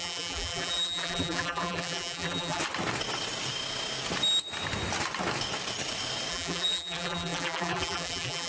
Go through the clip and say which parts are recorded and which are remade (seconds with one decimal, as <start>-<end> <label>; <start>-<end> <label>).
0.0-2.6 remade; 2.6-6.3 recorded; 6.3-8.5 remade